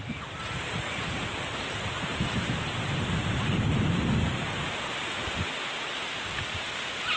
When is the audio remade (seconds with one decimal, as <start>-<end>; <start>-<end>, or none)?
2.4-5.5